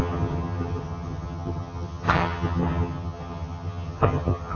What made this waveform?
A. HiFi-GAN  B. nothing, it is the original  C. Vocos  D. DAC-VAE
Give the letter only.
A